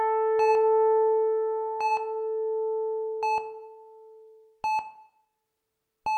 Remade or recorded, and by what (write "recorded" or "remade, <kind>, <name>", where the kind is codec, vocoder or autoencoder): recorded